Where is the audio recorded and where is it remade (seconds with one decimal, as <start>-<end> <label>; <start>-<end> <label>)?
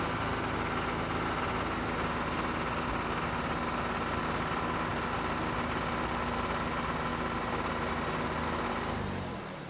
0.0-9.7 recorded